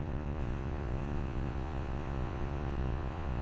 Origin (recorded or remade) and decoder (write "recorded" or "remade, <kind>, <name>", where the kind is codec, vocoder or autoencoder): remade, vocoder, Vocos